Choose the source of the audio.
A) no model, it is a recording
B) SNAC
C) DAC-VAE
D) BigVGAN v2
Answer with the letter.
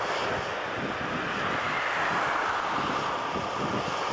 A